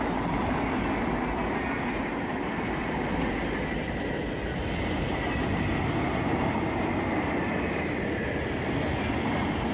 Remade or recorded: recorded